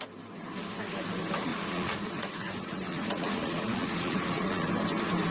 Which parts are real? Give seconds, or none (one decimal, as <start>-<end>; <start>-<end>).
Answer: 0.0-1.5; 4.7-5.3